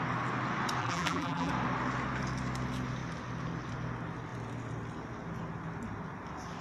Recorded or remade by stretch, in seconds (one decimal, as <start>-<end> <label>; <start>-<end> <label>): 0.0-0.8 recorded; 0.8-1.5 remade; 1.5-6.6 recorded